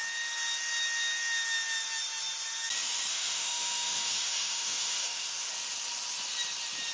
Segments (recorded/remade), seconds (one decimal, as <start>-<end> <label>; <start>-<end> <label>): 0.0-3.1 recorded; 3.1-5.5 remade; 5.5-6.9 recorded